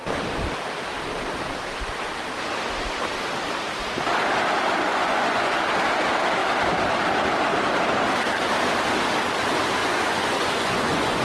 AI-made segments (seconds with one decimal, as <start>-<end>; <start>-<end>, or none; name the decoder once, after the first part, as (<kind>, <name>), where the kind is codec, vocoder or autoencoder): 4.9-5.6 (vocoder, Vocos); 9.8-11.2